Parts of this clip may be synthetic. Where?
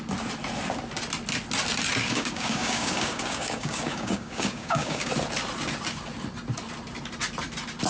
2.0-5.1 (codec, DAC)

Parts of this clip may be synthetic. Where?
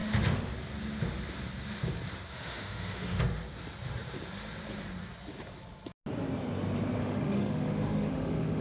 0.0-0.5 (autoencoder, DAC-VAE); 2.3-3.2; 7.0-8.6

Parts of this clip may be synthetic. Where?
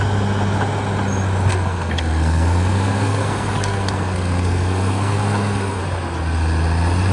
1.5-5.8 (codec, SNAC)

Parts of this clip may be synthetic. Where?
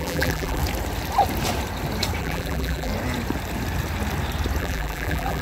0.0-0.6 (vocoder, BigVGAN v2); 2.2-2.9; 4.6-5.4